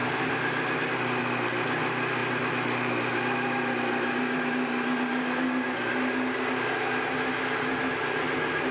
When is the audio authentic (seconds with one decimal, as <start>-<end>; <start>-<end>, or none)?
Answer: 0.0-8.7